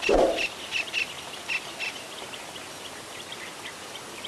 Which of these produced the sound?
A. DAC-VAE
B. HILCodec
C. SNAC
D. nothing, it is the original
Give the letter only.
D